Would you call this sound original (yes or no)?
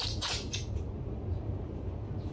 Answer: no